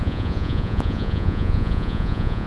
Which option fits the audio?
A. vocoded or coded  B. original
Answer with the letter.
A